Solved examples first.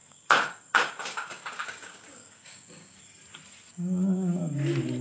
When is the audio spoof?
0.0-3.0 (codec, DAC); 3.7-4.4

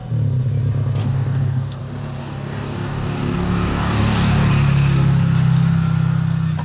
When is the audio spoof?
1.0-1.8 (codec, DAC); 2.2-4.5

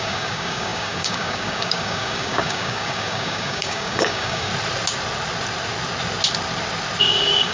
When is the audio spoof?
0.0-4.5 (codec, DAC); 7.0-7.5

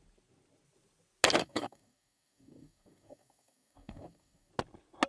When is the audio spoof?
1.4-4.5 (codec, DAC)

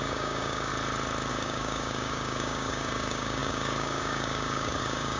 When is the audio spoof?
0.0-0.7 (codec, DAC); 1.3-5.2

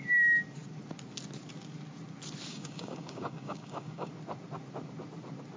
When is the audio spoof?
2.5-4.1 (codec, DAC)

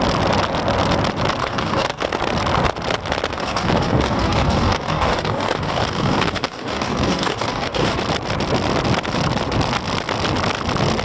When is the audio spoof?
1.4-2.0 (codec, DAC); 3.3-8.0

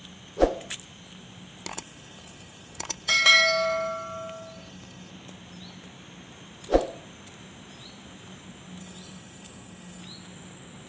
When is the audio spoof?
1.7-5.1 (codec, DAC); 8.8-10.0